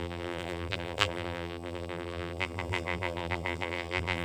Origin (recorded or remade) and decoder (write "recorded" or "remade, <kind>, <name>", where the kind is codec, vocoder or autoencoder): remade, vocoder, BigVGAN v2